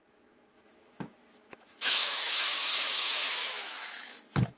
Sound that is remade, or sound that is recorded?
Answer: remade